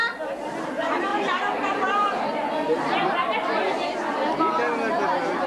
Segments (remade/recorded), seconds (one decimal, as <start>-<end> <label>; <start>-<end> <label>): 0.0-1.1 recorded; 1.1-3.1 remade; 3.1-5.5 recorded